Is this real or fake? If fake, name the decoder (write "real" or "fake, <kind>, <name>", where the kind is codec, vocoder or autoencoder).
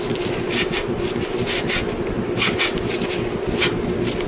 real